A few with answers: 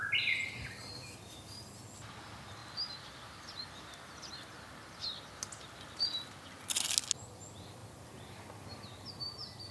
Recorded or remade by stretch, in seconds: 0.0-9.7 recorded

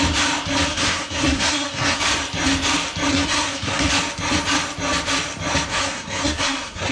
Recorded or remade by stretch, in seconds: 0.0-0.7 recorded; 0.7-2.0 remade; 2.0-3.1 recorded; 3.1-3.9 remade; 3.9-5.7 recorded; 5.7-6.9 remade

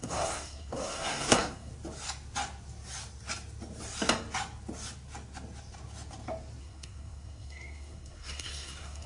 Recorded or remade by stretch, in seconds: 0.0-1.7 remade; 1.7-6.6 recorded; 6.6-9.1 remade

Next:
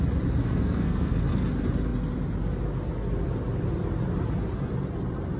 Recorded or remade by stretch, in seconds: 0.0-0.4 recorded; 0.4-1.2 remade; 1.2-5.4 recorded